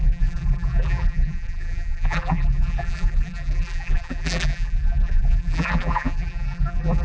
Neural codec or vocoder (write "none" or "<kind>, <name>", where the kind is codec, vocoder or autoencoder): vocoder, BigVGAN v2